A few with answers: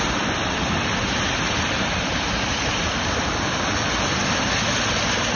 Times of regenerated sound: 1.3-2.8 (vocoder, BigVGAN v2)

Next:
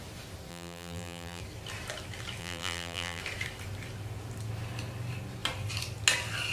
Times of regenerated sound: 0.5-1.4 (vocoder, BigVGAN v2); 2.4-3.2

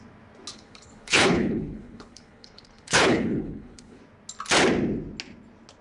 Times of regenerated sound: 0.5-4.0 (codec, HILCodec)

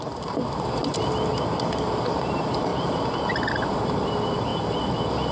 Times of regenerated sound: 0.0-0.8 (vocoder, BigVGAN v2); 1.9-2.7; 3.4-5.3

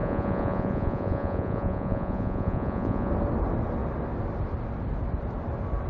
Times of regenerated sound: 0.0-3.1 (vocoder, Vocos)